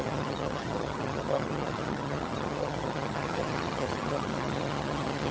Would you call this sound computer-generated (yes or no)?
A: yes